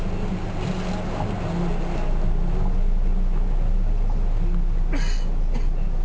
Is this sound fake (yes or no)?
no